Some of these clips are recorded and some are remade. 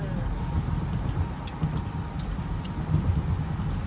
recorded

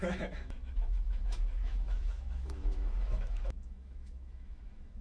remade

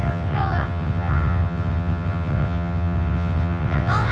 remade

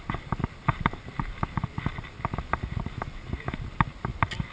recorded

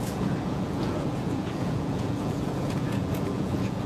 remade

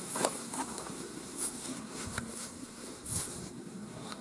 remade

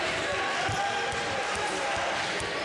recorded